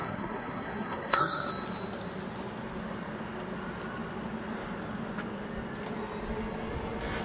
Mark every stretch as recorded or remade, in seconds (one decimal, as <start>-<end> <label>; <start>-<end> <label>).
0.0-1.5 remade; 1.5-7.2 recorded